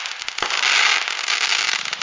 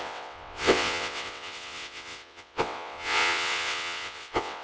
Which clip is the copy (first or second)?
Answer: second